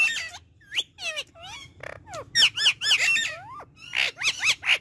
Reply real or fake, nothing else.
real